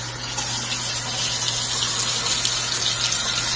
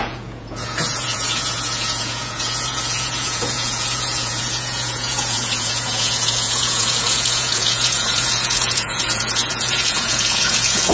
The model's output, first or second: second